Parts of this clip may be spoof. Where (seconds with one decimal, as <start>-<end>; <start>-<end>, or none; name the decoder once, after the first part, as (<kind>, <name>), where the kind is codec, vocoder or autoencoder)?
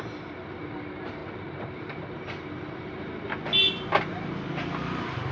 none